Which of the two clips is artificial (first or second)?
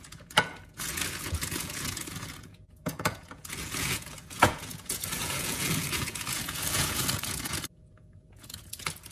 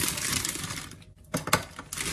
first